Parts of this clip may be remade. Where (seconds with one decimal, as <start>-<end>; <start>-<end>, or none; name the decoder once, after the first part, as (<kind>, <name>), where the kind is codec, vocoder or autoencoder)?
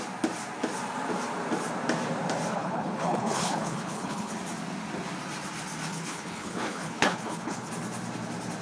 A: 2.5-4.3 (codec, HILCodec); 5.9-7.7